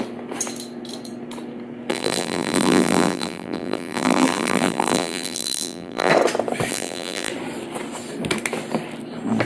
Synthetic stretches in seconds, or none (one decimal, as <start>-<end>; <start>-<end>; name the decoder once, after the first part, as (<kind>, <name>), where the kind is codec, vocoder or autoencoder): 1.9-6.1 (vocoder, BigVGAN v2); 6.7-7.3